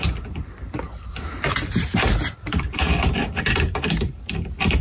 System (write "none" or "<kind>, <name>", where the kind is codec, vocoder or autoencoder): none